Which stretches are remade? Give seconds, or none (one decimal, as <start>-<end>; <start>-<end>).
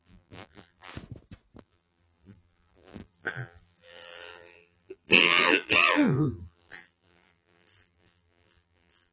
0.0-0.9; 1.6-9.1